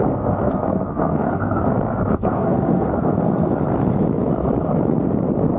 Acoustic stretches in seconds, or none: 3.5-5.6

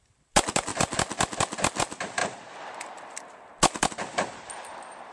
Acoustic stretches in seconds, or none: 0.0-5.1